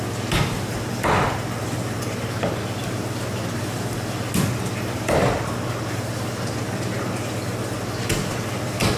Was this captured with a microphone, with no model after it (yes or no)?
yes